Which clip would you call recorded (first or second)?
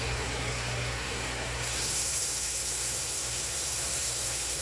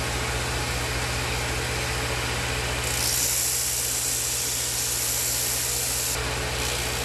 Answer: second